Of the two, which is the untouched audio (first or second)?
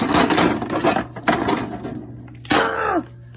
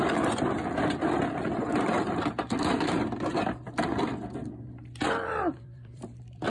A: first